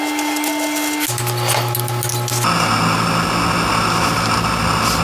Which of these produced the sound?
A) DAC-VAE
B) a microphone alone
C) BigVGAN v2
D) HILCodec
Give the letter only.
B